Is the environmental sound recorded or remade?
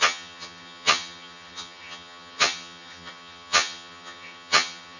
remade